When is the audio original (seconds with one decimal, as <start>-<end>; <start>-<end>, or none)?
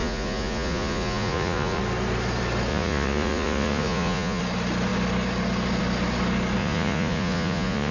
1.8-2.7; 4.4-6.6